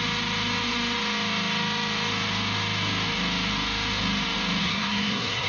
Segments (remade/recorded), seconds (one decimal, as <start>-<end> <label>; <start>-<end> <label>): 0.0-4.6 recorded; 4.6-5.5 remade